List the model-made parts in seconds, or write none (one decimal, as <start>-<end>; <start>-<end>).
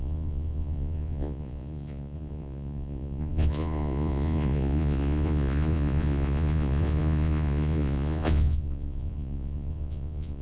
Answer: 0.0-10.4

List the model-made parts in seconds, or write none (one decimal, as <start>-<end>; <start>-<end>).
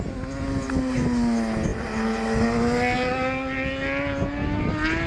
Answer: none